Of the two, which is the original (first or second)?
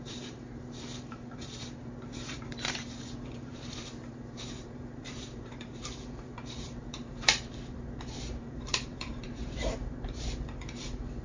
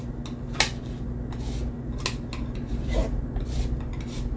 second